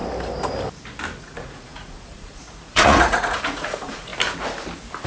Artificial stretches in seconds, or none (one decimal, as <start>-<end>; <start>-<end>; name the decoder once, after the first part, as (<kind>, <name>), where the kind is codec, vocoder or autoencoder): 1.2-4.1 (vocoder, Vocos)